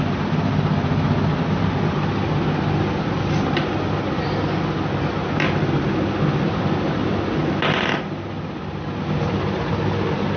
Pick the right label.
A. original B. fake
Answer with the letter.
A